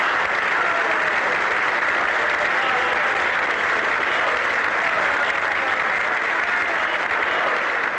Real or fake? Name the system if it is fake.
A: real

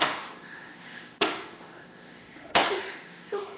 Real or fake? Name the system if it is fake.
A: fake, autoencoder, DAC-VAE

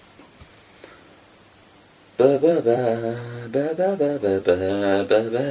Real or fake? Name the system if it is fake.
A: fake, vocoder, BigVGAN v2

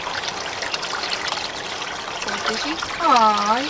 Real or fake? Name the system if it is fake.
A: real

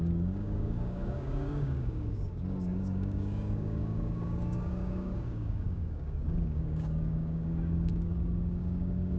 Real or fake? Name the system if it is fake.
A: fake, codec, DAC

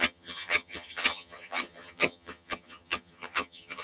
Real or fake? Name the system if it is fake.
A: fake, vocoder, HiFi-GAN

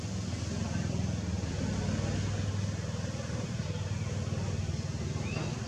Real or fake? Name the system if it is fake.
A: real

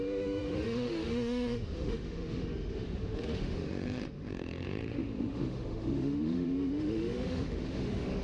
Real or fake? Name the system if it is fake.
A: fake, autoencoder, DAC-VAE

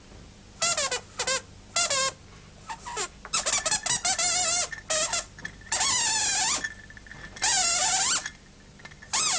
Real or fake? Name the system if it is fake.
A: real